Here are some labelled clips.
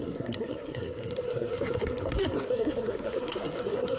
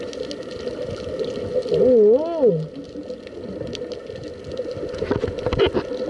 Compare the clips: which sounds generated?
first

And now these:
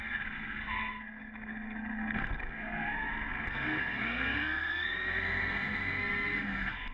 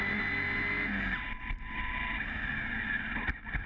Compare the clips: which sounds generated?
first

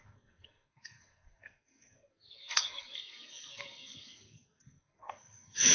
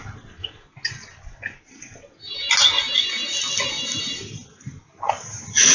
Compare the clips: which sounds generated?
first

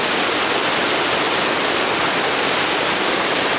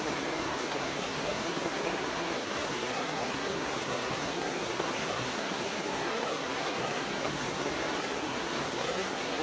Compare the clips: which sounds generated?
second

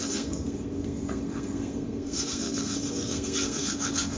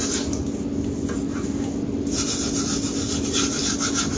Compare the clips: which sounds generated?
first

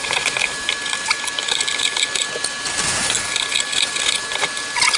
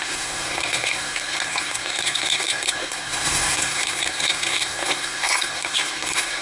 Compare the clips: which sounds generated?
second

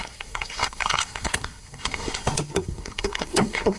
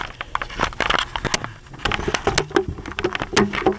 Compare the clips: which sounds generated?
first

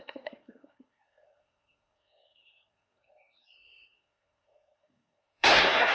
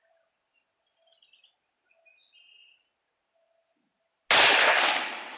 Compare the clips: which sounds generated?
first